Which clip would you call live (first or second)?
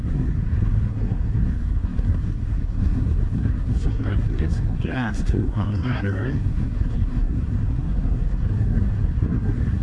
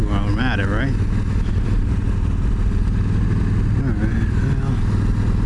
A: second